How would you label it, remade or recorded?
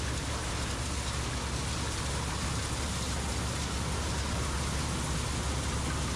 recorded